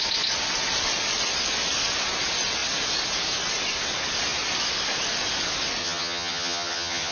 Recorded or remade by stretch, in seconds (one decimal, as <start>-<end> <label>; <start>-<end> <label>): 0.0-5.8 recorded; 5.8-7.1 remade